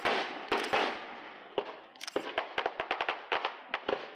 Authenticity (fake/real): real